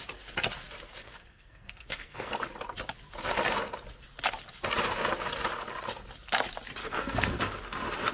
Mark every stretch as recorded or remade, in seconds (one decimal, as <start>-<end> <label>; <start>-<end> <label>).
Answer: 0.0-1.0 recorded; 1.0-2.3 remade; 2.3-6.8 recorded; 6.8-7.4 remade; 7.4-8.1 recorded